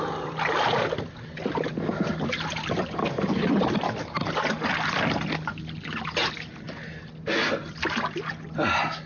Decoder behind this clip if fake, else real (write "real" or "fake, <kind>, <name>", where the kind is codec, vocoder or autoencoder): real